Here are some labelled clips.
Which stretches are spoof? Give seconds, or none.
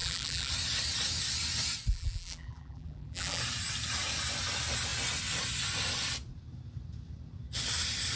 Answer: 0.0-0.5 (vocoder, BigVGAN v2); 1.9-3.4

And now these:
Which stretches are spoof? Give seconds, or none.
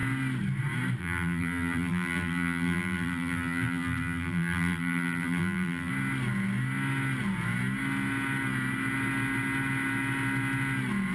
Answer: 1.0-5.9 (vocoder, BigVGAN v2)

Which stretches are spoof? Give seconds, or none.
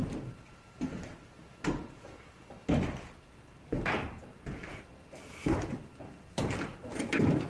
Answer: none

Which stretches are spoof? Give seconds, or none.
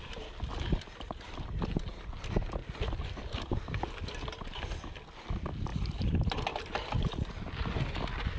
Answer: 5.7-7.1 (vocoder, BigVGAN v2)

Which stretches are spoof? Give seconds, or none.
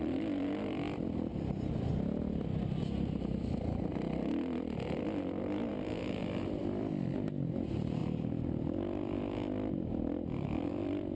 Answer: 0.0-1.3 (vocoder, BigVGAN v2); 2.8-3.9; 5.0-5.7; 6.2-11.2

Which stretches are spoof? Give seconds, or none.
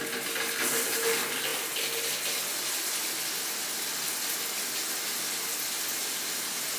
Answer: none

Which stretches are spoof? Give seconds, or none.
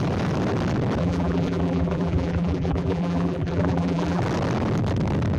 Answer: 1.0-4.2 (vocoder, BigVGAN v2)